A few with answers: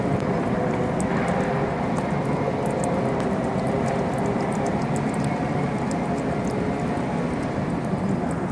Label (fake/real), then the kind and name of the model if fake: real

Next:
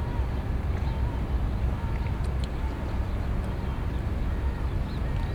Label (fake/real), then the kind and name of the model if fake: real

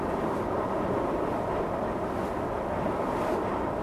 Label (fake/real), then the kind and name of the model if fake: real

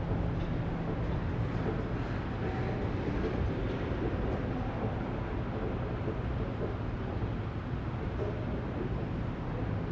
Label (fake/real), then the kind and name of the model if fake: real